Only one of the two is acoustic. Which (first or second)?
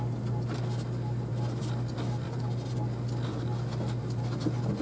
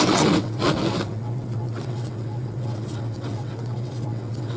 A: first